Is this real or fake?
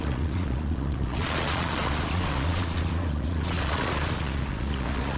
fake